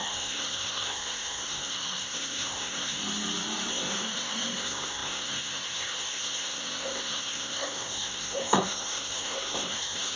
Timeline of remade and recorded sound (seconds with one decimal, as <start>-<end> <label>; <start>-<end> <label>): 0.0-3.0 remade; 3.0-3.7 recorded; 3.7-10.2 remade